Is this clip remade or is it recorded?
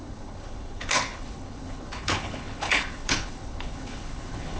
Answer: remade